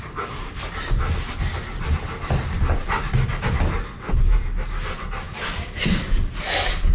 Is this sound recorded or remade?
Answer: recorded